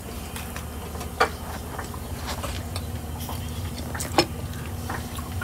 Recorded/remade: recorded